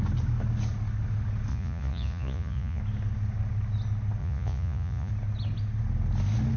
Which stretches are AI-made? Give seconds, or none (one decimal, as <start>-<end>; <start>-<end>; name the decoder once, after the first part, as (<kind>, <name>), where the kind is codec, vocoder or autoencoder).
1.5-2.8 (vocoder, Vocos); 4.2-5.1